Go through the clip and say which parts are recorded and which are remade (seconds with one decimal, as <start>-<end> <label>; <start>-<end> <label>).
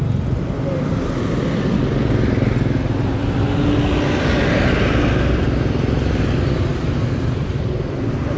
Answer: 0.0-8.4 recorded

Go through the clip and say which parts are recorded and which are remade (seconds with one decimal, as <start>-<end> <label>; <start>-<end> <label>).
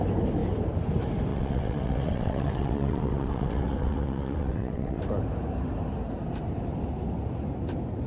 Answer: 0.0-1.3 recorded; 1.3-5.0 remade; 5.0-8.1 recorded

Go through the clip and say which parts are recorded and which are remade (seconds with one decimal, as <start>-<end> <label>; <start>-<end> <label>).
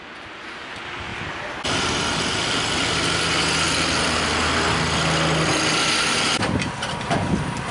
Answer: 0.0-7.7 recorded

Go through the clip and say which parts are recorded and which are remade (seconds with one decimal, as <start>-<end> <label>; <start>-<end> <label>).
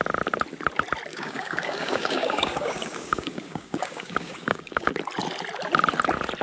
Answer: 0.0-1.1 recorded; 1.1-4.9 remade; 4.9-6.4 recorded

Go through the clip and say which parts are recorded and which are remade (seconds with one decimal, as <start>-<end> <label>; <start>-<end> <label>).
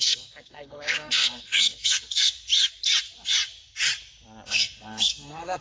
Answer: 0.0-2.5 remade; 2.5-4.5 recorded; 4.5-5.6 remade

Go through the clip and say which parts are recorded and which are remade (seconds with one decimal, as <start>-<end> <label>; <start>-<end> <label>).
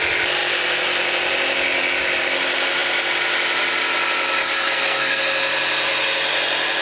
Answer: 0.0-4.4 recorded; 4.4-5.2 remade; 5.2-6.8 recorded